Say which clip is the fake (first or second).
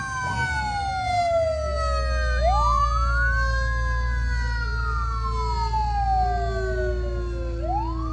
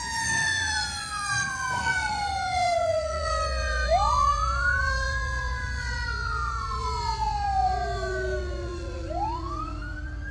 second